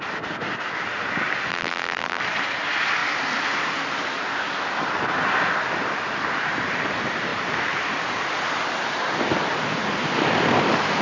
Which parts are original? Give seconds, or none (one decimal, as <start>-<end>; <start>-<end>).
0.0-1.5; 2.2-11.0